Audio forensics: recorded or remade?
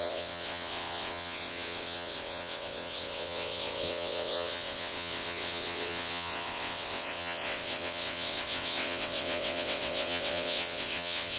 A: remade